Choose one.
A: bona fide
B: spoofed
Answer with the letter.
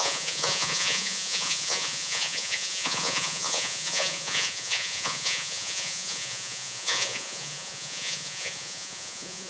B